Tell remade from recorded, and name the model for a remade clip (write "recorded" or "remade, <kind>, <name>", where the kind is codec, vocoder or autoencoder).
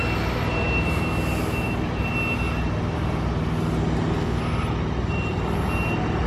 recorded